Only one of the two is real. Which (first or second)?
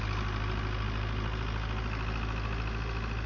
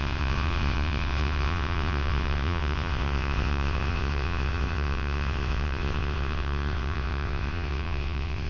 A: first